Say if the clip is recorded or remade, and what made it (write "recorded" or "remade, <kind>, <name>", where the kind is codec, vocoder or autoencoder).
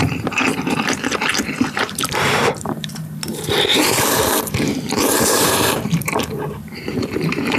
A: remade, vocoder, BigVGAN v2